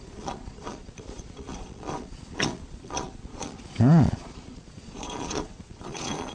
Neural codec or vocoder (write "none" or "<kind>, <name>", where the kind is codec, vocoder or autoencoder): vocoder, Vocos